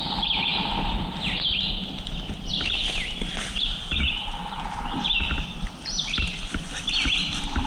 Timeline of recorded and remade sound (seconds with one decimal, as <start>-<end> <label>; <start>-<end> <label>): 0.0-3.3 recorded; 3.3-4.1 remade; 4.1-7.7 recorded